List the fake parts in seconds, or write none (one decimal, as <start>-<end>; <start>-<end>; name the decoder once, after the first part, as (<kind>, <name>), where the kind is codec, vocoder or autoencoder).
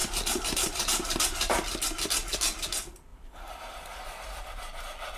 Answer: 0.0-1.5 (vocoder, BigVGAN v2); 3.1-4.8